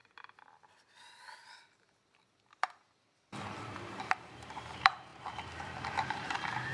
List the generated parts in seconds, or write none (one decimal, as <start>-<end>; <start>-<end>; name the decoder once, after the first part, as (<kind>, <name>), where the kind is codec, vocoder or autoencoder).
4.0-6.7 (vocoder, BigVGAN v2)